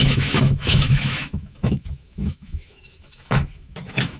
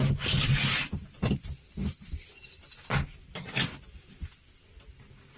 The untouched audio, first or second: second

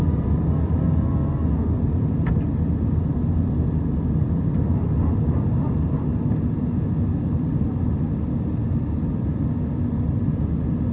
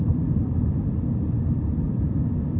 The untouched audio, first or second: first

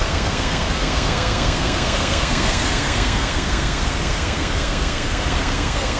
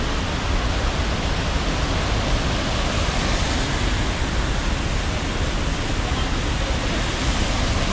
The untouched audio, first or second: second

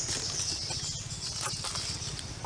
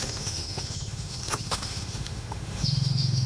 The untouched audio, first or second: first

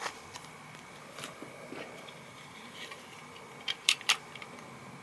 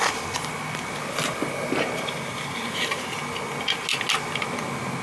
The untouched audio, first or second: second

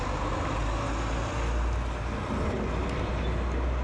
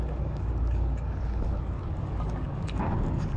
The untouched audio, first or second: first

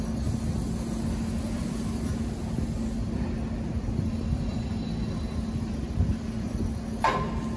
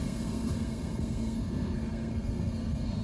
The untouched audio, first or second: first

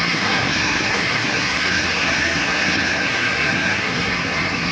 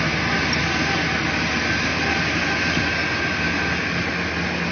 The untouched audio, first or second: second